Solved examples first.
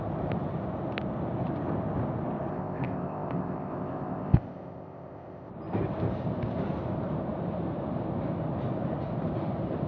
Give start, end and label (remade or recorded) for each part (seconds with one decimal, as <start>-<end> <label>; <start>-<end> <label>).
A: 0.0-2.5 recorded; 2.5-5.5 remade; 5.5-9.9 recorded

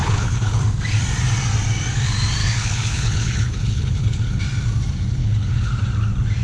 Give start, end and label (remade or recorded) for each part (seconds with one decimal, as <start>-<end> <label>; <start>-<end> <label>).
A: 0.0-0.6 remade; 0.6-2.4 recorded; 2.4-4.4 remade; 4.4-5.2 recorded; 5.2-5.7 remade; 5.7-6.4 recorded

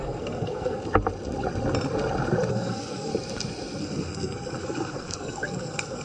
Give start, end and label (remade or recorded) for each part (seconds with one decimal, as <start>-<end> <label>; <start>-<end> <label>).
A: 0.0-0.8 remade; 0.8-2.5 recorded; 2.5-3.1 remade; 3.1-3.8 recorded; 3.8-6.0 remade

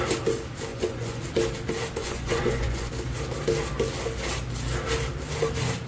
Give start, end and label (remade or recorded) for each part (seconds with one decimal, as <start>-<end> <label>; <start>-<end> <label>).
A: 0.0-0.7 recorded; 0.7-1.2 remade; 1.2-2.0 recorded; 2.0-2.9 remade; 2.9-5.9 recorded

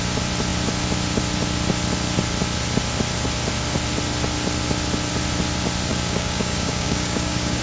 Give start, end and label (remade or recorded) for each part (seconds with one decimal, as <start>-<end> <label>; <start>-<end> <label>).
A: 0.0-5.9 recorded; 5.9-7.6 remade

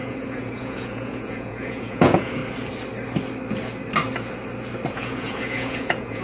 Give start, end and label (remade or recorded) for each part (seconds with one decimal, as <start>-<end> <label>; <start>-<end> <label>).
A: 0.0-2.4 remade; 2.4-4.9 recorded; 4.9-6.2 remade

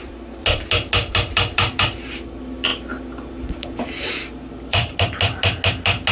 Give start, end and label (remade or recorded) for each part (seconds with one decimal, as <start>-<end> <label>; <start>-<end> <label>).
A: 0.0-6.1 recorded